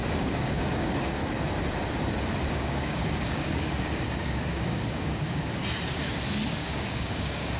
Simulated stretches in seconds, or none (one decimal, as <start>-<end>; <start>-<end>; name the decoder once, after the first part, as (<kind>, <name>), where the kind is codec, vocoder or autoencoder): 0.0-1.2 (codec, DAC); 2.5-5.6; 6.5-7.6